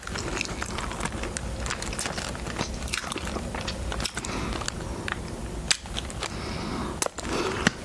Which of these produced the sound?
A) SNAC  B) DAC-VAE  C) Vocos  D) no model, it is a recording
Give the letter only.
D